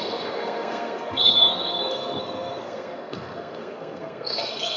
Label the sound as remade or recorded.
remade